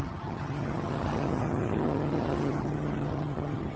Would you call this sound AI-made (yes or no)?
yes